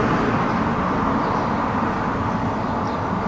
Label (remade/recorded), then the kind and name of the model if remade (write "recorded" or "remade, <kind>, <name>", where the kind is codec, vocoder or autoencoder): recorded